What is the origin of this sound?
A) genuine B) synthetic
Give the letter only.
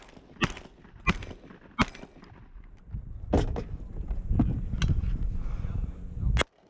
A